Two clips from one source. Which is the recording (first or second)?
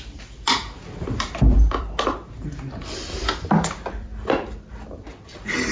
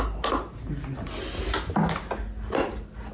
second